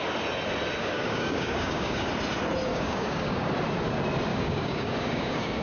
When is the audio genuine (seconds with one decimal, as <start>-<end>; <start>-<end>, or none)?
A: 0.0-0.8; 2.1-2.7; 3.5-4.3